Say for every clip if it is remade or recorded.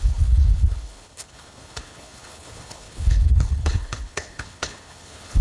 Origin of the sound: remade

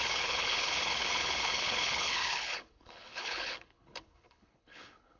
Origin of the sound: remade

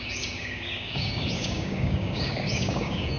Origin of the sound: remade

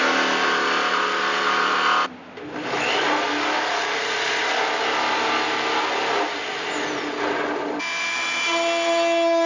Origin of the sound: recorded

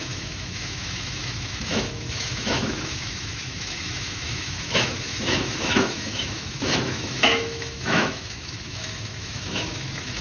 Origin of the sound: remade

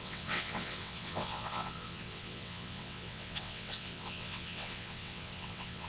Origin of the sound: remade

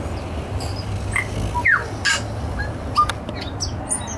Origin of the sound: recorded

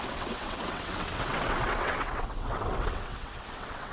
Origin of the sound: remade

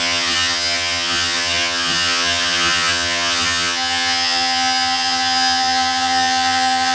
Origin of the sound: remade